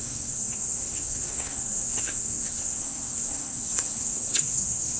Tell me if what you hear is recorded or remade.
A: remade